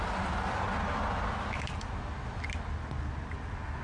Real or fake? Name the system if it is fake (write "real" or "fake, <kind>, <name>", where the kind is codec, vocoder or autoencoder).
real